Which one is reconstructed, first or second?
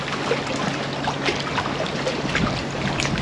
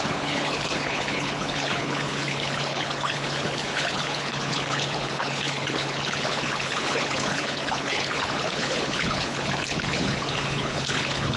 second